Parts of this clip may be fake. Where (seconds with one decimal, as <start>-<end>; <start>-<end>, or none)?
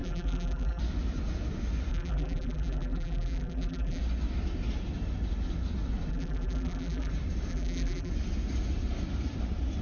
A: 0.0-0.8; 1.9-4.0; 6.1-7.1; 7.5-8.1